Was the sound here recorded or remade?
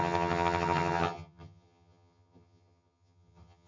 remade